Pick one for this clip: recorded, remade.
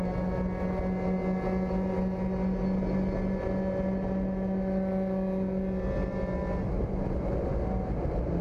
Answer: recorded